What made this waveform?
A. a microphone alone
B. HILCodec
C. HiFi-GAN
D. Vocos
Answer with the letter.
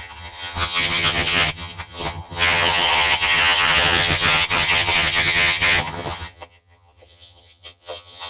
C